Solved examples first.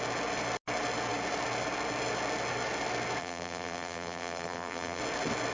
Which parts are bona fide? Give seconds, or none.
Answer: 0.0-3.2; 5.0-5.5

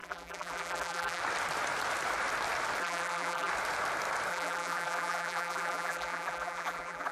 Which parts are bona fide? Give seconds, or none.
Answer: 1.2-2.8; 3.5-4.3